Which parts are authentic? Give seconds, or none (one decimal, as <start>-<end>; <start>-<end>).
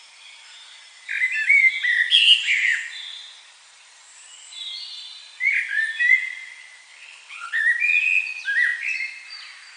0.0-6.9; 7.6-9.8